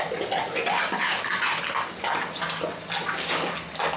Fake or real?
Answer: real